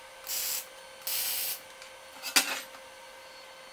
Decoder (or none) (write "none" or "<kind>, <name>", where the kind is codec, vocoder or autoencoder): none